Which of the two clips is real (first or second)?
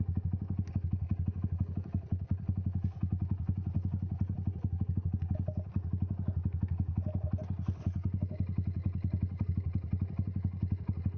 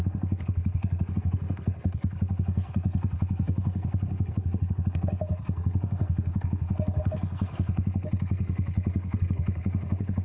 first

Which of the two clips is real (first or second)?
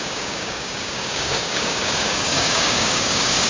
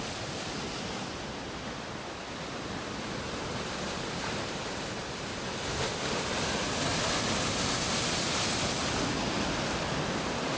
second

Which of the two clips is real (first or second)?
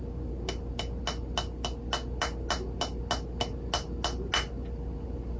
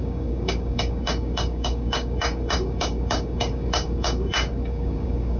first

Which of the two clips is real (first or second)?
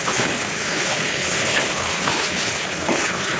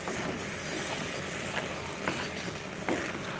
second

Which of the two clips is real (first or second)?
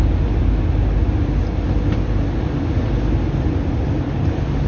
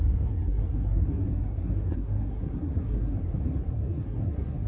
first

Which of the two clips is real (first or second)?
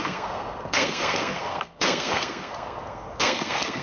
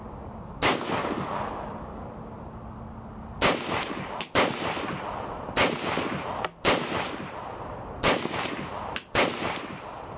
second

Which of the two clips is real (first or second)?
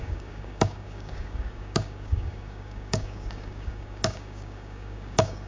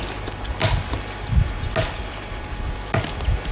second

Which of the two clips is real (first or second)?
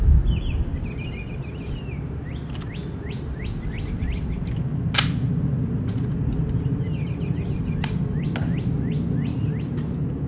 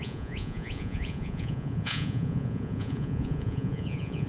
first